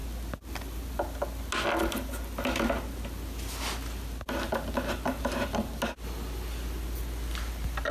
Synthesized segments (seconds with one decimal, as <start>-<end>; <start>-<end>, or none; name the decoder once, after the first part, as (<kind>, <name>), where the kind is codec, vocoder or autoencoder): none